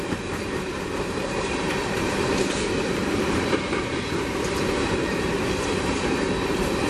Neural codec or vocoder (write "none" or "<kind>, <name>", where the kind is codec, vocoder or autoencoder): vocoder, BigVGAN v2